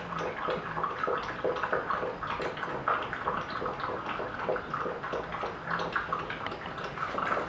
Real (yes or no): yes